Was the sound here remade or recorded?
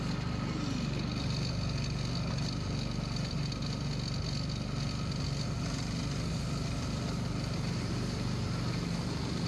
recorded